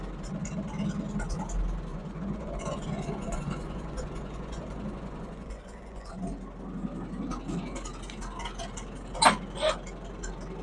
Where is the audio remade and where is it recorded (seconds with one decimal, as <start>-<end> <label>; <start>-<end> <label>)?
0.0-1.9 recorded; 1.9-6.1 remade; 6.1-10.6 recorded